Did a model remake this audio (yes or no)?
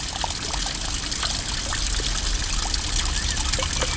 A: no